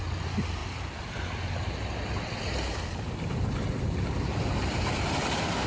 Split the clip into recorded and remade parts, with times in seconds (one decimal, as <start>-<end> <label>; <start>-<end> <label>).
0.0-5.7 recorded